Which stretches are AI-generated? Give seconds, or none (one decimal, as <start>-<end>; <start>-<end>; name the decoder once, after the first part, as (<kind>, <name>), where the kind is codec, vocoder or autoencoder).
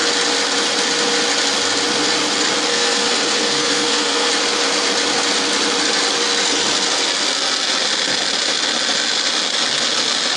2.7-4.3 (codec, SNAC)